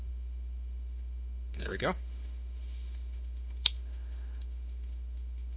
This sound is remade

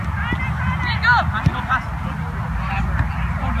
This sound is recorded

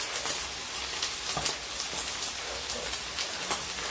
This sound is recorded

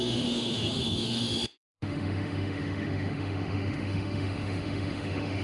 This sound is remade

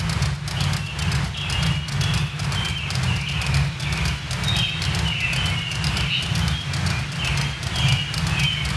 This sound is recorded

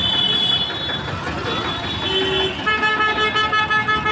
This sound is recorded